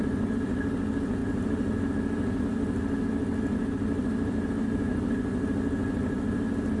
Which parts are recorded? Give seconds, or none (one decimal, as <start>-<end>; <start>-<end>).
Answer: 0.0-6.8